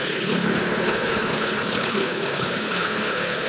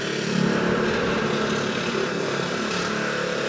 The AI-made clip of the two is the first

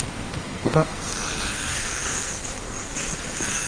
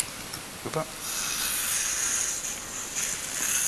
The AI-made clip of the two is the first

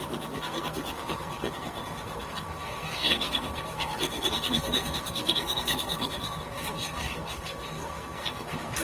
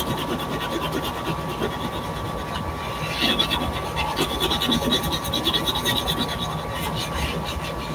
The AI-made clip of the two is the first